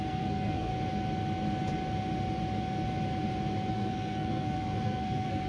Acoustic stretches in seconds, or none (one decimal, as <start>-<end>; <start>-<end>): 0.7-3.7